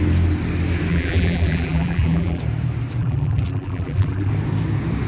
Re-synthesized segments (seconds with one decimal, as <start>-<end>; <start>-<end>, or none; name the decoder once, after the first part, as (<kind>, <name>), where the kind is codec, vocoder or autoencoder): 0.9-2.4 (vocoder, BigVGAN v2); 3.0-4.3